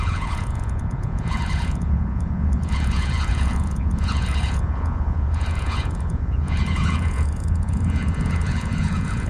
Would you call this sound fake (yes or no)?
yes